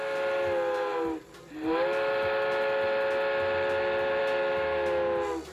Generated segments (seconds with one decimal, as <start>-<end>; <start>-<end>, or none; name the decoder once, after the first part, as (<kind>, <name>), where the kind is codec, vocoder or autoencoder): none

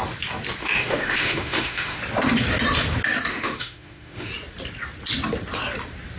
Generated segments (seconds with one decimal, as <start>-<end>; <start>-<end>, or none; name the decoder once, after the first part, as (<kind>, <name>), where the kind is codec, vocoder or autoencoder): 0.6-2.0 (autoencoder, DAC-VAE); 3.3-4.3

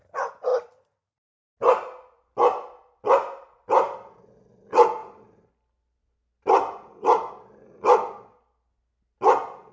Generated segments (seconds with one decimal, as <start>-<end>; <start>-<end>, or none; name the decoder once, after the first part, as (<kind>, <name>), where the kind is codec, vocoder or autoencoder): none

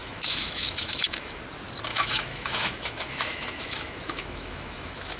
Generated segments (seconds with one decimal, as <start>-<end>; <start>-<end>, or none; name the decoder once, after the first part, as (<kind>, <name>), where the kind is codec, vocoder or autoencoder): 0.0-1.4 (autoencoder, DAC-VAE); 1.9-5.2

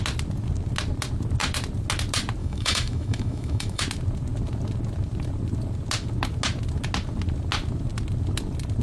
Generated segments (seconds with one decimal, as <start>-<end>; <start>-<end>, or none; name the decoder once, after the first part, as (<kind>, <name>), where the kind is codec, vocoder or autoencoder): 2.4-3.8 (autoencoder, DAC-VAE)

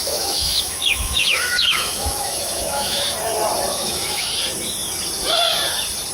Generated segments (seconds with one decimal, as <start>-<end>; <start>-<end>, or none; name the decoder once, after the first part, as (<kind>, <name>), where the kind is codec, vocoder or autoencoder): 0.0-3.0 (autoencoder, DAC-VAE); 3.7-4.3

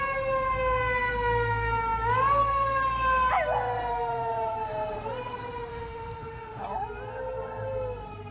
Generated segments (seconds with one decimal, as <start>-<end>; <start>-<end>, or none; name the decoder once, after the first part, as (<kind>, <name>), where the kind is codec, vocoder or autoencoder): 5.7-6.6 (autoencoder, DAC-VAE)

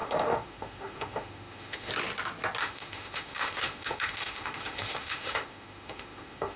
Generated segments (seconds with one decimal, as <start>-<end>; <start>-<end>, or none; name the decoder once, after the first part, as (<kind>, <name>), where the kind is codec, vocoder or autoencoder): 0.0-1.9 (autoencoder, DAC-VAE); 2.6-6.6